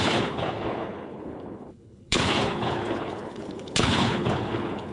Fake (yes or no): yes